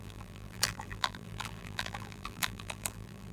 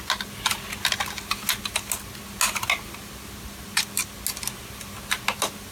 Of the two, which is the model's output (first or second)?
first